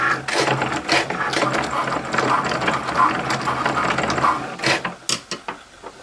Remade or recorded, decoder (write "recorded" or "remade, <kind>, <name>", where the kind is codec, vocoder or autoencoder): recorded